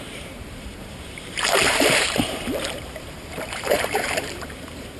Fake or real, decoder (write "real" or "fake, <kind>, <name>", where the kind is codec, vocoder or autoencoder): fake, vocoder, BigVGAN v2